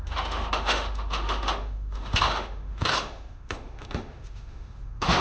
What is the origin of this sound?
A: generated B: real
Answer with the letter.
A